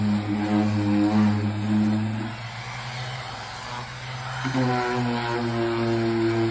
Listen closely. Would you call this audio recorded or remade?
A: recorded